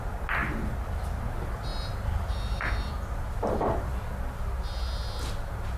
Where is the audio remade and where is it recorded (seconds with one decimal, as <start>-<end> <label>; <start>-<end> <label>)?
0.0-5.8 recorded